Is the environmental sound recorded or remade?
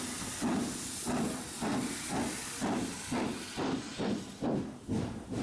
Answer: recorded